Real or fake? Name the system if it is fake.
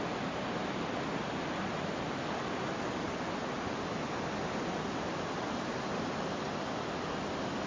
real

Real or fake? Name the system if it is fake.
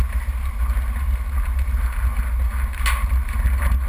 real